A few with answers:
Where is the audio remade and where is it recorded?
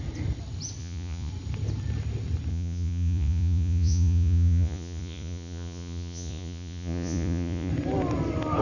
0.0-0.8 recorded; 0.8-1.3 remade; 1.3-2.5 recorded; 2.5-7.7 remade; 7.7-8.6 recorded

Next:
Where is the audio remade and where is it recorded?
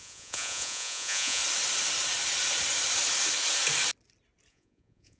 0.0-1.4 remade; 1.4-4.5 recorded; 4.5-5.2 remade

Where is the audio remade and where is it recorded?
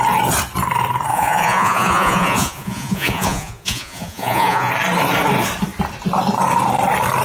0.0-1.1 recorded; 1.1-4.7 remade; 4.7-7.2 recorded